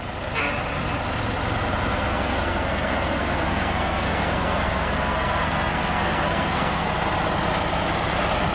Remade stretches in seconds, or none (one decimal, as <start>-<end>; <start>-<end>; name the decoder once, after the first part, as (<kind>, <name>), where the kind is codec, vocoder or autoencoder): 1.9-6.9 (codec, SNAC)